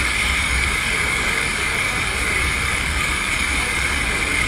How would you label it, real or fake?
fake